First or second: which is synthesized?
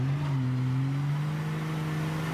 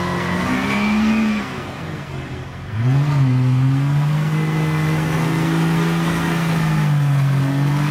second